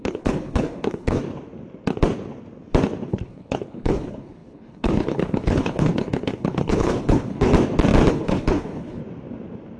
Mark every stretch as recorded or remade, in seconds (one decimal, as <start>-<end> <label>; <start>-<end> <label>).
0.0-1.2 remade; 1.2-3.1 recorded; 3.1-7.5 remade; 7.5-8.1 recorded; 8.1-9.0 remade; 9.0-9.8 recorded